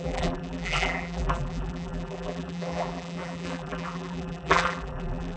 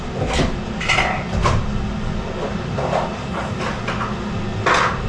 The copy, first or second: first